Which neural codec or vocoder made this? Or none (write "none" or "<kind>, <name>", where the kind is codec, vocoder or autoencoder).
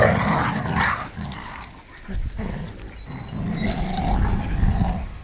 none